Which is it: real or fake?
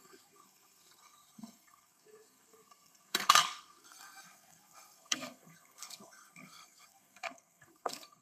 fake